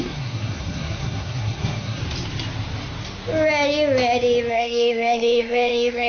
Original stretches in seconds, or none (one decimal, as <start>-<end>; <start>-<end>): 2.0-4.5